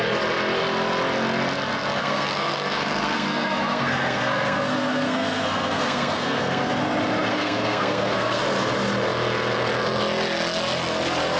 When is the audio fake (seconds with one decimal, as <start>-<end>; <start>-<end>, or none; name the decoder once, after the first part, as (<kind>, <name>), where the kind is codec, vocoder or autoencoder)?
2.0-6.8 (codec, SNAC); 7.3-8.4